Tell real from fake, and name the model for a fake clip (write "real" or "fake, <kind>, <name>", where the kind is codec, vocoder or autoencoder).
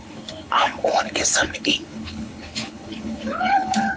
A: fake, codec, HILCodec